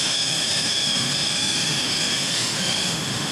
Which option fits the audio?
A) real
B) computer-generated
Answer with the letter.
B